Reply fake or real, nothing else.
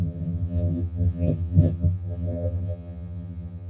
fake